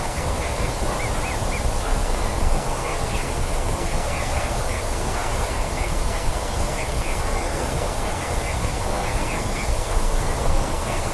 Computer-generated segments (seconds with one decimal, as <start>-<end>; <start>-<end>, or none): 0.0-0.8; 1.8-11.1